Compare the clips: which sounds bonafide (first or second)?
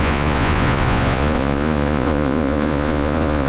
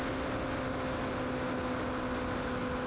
second